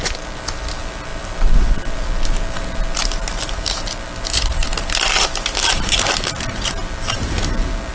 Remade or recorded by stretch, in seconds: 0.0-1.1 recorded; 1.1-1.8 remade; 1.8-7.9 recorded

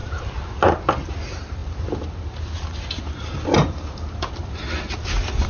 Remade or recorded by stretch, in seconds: 0.0-1.1 remade; 1.1-4.4 recorded; 4.4-5.0 remade; 5.0-5.5 recorded

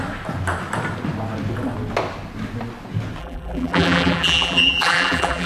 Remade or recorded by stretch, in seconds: 0.0-3.2 recorded; 3.2-5.5 remade

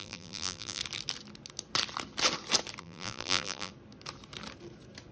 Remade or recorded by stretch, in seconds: 0.0-0.8 remade; 0.8-2.8 recorded; 2.8-3.7 remade; 3.7-5.1 recorded